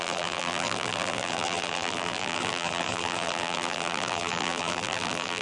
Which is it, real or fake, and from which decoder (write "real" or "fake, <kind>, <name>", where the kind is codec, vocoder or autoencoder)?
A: fake, vocoder, BigVGAN v2